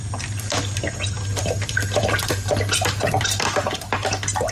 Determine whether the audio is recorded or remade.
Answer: remade